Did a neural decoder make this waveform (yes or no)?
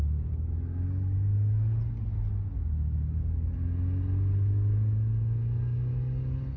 no